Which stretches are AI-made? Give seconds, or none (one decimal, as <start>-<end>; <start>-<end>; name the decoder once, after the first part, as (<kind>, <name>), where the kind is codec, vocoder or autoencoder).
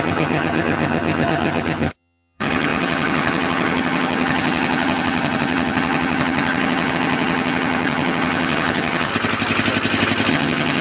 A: 0.0-9.1 (vocoder, HiFi-GAN); 10.3-10.8